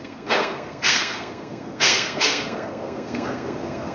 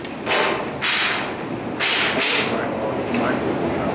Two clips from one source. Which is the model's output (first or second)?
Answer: first